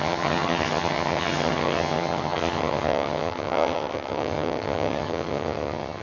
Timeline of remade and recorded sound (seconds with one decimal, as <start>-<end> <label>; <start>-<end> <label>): 0.0-6.0 remade